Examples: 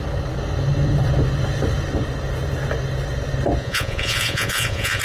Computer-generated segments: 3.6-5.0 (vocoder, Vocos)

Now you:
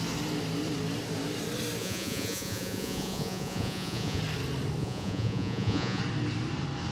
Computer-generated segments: 1.8-4.2 (vocoder, Vocos); 4.8-6.0